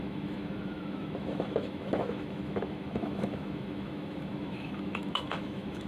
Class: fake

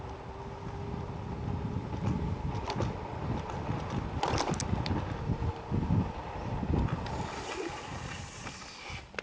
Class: real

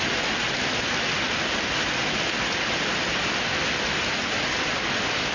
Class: real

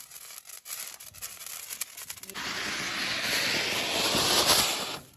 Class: real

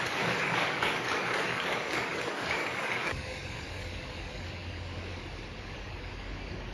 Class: fake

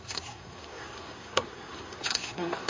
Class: fake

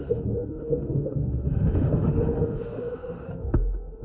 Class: fake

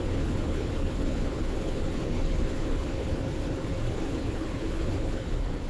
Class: fake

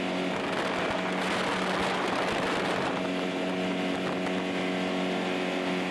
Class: real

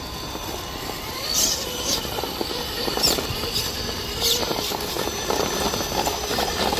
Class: real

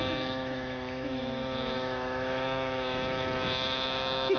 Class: fake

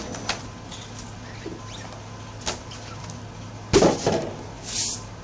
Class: real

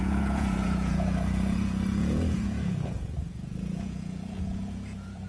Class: fake